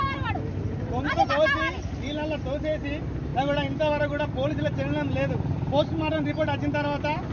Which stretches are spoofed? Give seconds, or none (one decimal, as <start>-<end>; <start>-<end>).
none